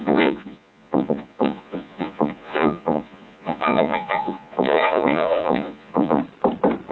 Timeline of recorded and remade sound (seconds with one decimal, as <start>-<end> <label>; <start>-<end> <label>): 0.0-6.2 remade; 6.2-6.9 recorded